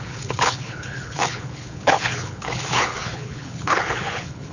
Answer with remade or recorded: remade